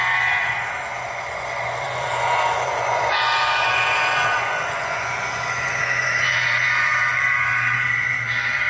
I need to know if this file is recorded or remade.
remade